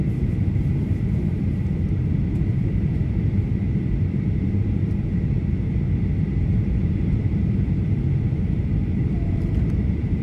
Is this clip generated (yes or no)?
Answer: yes